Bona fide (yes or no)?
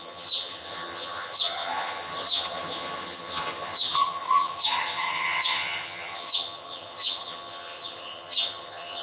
no